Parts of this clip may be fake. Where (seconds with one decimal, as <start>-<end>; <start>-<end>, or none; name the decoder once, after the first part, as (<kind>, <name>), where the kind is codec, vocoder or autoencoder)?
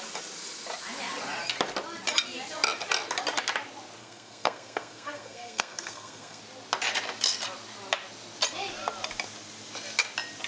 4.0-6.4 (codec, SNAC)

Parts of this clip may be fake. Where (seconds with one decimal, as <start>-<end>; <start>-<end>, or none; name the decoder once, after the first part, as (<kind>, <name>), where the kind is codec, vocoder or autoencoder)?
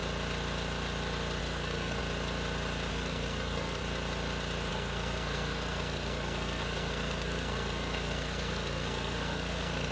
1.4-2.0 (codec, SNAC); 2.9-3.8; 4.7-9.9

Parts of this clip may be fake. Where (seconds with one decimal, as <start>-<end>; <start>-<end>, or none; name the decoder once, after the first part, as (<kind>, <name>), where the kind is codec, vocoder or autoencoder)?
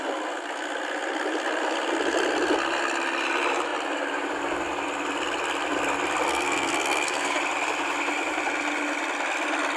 6.3-7.4 (codec, SNAC)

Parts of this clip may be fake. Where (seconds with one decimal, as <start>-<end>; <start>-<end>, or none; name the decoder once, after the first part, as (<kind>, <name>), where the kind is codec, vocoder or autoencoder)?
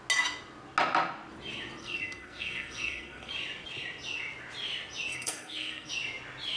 1.8-3.3 (codec, SNAC); 5.1-5.9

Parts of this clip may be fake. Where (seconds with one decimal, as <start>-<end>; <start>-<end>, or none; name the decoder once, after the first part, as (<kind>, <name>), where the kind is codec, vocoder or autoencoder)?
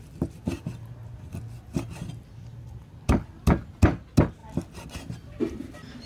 none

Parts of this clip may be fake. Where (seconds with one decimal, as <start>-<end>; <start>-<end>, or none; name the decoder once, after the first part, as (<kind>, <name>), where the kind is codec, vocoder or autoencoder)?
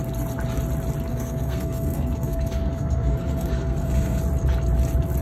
1.1-4.2 (codec, SNAC)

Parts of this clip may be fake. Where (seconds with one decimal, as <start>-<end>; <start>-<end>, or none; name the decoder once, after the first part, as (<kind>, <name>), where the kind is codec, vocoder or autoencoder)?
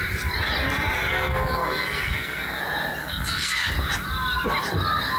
1.1-2.6 (codec, SNAC); 3.0-3.7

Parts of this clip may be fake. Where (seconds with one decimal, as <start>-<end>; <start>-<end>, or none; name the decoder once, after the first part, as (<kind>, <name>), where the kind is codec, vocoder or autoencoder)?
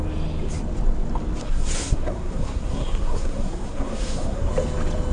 1.4-4.5 (codec, SNAC)